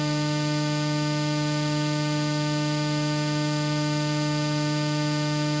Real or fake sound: real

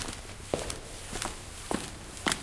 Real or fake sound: real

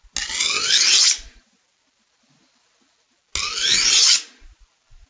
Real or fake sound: real